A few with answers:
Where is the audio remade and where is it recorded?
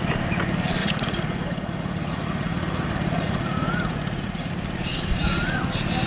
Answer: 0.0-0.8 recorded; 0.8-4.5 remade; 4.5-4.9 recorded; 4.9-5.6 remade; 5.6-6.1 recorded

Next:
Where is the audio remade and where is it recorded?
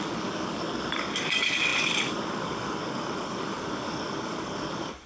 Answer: 0.0-5.1 remade